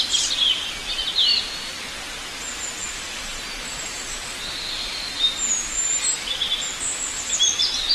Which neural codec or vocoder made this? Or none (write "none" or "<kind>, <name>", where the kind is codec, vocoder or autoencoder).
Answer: vocoder, BigVGAN v2